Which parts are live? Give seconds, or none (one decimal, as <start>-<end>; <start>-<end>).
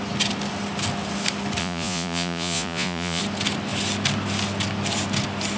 0.0-1.6; 3.2-5.6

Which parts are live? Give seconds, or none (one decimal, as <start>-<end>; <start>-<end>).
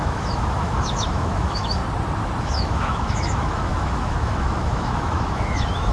1.8-2.4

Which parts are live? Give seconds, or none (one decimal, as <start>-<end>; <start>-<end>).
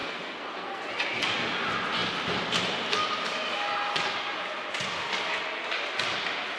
0.8-6.6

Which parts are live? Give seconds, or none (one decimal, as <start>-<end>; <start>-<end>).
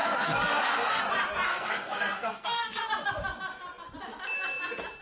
1.0-1.5; 2.9-5.0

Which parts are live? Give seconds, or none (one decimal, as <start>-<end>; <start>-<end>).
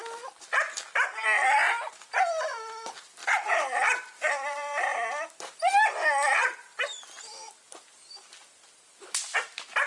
0.0-3.2; 5.1-6.5; 7.5-9.9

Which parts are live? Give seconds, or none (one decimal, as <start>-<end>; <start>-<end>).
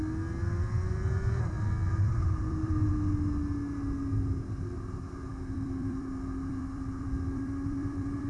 0.0-1.8; 2.9-5.3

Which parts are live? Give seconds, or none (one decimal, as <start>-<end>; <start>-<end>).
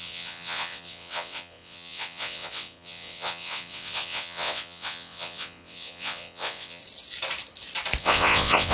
6.8-8.0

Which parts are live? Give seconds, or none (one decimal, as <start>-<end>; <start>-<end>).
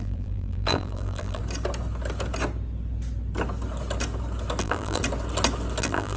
1.4-4.6; 5.0-5.8